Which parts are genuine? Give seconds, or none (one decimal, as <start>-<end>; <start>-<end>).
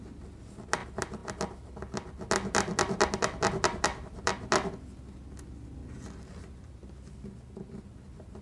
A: 0.0-8.4